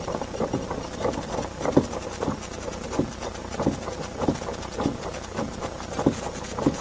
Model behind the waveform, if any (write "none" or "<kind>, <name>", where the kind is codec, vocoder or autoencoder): none